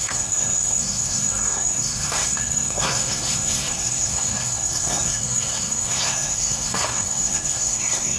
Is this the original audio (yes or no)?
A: no